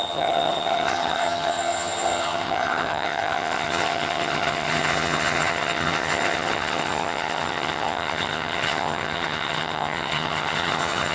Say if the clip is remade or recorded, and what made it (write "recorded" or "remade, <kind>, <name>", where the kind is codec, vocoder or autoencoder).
remade, vocoder, HiFi-GAN